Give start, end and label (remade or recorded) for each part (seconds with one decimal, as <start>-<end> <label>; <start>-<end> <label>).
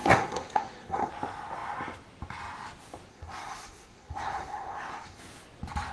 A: 0.0-1.1 remade; 1.1-3.1 recorded; 3.1-5.2 remade; 5.2-5.9 recorded